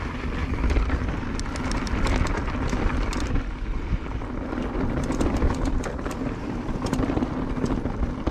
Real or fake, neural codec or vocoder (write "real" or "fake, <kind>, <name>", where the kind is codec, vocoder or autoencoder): real